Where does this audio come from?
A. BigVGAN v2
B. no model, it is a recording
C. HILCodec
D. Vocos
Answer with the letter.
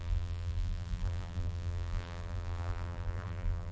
A